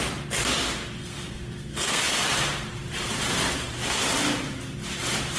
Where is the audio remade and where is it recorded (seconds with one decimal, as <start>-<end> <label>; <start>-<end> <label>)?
0.0-1.0 recorded; 1.0-2.0 remade; 2.0-5.4 recorded